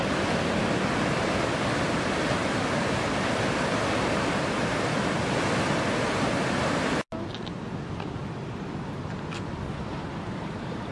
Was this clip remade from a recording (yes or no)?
no